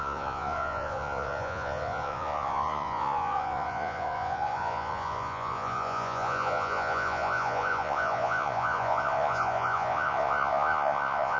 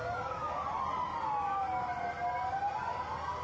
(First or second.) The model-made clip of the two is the first